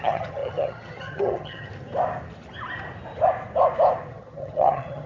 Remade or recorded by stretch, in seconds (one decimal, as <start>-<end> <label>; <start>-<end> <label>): 0.0-1.7 remade; 1.7-4.1 recorded; 4.1-5.1 remade